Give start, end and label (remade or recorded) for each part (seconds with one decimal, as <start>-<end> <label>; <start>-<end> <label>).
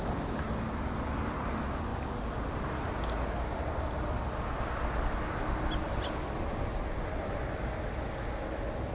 0.0-8.9 recorded